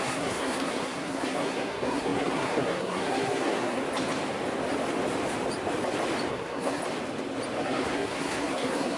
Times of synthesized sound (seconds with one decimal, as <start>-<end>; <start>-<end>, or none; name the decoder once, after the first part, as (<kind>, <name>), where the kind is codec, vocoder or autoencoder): 0.0-3.8 (codec, SNAC); 6.3-6.8; 7.6-9.0